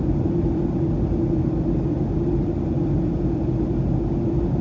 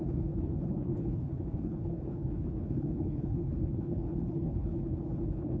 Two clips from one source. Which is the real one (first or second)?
first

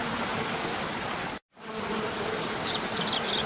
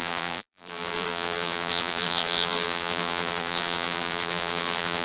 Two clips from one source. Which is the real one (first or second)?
first